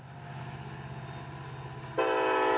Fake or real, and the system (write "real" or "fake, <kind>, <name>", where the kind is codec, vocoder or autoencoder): real